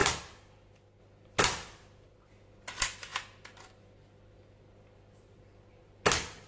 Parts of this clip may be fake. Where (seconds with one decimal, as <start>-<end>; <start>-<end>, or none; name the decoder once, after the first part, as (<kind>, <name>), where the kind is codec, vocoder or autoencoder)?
none